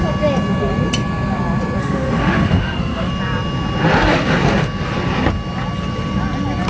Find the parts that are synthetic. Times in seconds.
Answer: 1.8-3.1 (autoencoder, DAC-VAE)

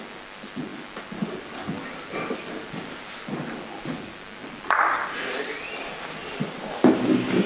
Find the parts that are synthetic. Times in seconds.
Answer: 0.7-1.7 (vocoder, BigVGAN v2); 6.2-6.8

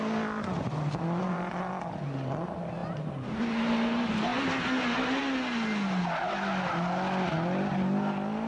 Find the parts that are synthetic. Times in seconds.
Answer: 1.2-1.7 (vocoder, BigVGAN v2); 2.8-3.4

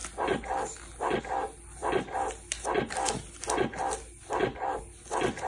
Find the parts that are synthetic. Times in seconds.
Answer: none

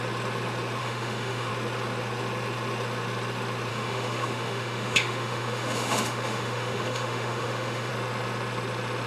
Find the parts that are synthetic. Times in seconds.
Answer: 0.8-1.5 (autoencoder, DAC-VAE); 3.7-7.9

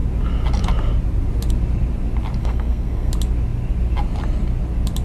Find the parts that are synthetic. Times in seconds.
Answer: 2.4-3.1 (codec, SNAC)